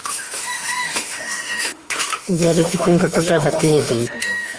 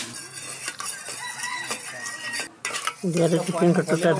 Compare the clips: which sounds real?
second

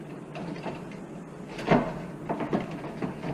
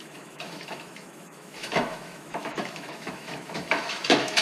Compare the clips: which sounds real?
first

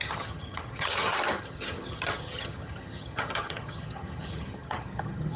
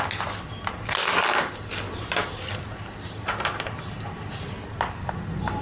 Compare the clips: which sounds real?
second